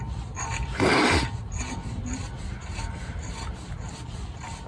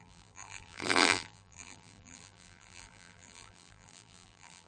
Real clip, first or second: first